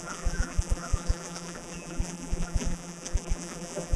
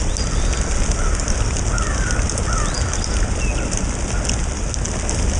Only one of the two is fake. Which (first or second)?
first